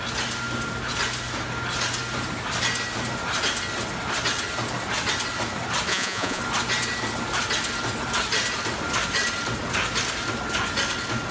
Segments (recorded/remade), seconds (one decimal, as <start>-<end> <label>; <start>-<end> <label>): 0.0-5.9 recorded; 5.9-6.4 remade; 6.4-11.3 recorded